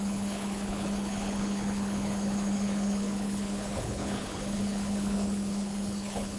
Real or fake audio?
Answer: fake